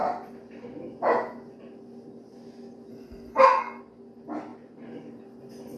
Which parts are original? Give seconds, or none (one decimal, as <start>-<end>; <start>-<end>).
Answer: 0.0-2.9; 3.8-5.8

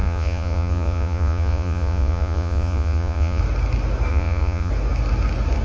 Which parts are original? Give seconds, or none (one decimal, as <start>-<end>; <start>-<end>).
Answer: 3.4-4.1; 4.7-5.6

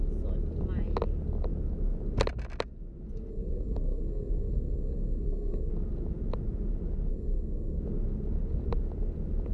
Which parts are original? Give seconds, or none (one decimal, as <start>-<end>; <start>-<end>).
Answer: 0.0-3.3; 5.7-7.1; 7.8-9.5

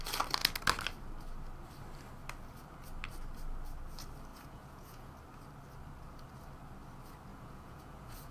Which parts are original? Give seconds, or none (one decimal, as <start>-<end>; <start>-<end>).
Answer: 0.0-4.3; 5.1-7.3

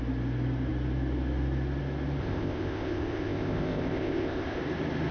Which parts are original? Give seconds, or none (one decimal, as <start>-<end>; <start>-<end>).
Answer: 0.0-2.2; 4.6-5.1

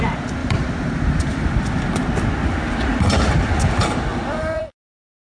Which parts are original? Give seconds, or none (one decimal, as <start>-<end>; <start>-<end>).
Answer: 0.0-0.4; 1.8-4.1; 4.7-5.3